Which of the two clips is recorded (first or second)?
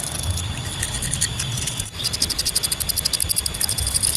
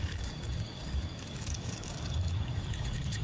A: first